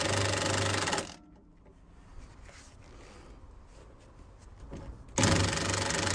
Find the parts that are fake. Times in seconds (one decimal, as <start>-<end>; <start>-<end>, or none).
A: none